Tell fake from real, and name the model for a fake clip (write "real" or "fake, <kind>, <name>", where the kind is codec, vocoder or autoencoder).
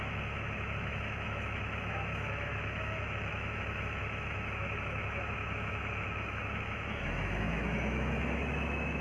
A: fake, autoencoder, DAC-VAE